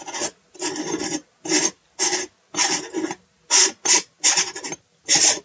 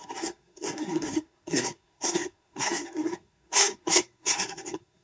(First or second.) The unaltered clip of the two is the first